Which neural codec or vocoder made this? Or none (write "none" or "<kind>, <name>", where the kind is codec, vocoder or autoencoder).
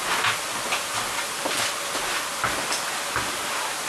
none